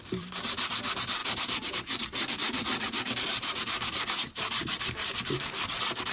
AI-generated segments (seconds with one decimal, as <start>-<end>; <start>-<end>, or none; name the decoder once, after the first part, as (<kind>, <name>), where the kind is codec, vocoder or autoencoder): 0.0-5.1 (vocoder, BigVGAN v2)